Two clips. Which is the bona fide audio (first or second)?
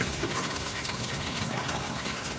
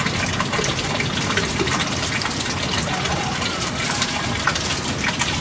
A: second